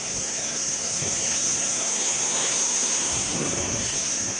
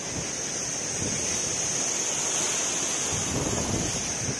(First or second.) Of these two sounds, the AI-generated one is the first